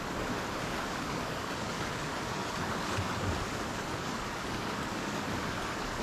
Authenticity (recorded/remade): remade